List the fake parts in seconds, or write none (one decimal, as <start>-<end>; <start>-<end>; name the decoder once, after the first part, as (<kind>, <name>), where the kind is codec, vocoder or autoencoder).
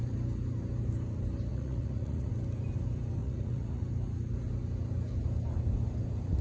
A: 1.5-2.3 (vocoder, Vocos); 3.2-3.8